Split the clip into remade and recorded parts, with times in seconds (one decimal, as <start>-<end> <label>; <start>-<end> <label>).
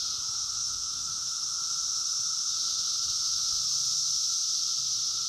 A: 0.0-0.6 recorded; 0.6-1.4 remade; 1.4-5.3 recorded